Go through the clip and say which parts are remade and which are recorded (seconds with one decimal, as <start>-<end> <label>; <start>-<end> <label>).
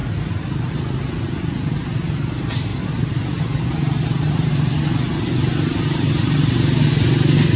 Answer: 0.0-0.7 remade; 0.7-2.7 recorded; 2.7-4.7 remade; 4.7-7.6 recorded